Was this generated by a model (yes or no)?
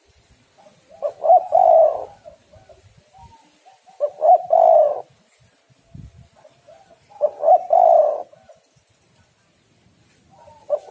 no